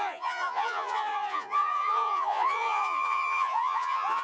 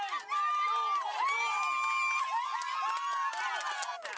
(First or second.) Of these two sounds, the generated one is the first